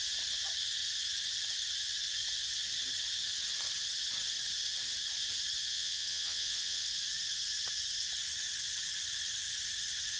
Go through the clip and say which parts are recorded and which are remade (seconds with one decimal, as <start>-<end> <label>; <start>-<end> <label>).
0.0-5.7 recorded; 5.7-6.9 remade; 6.9-10.2 recorded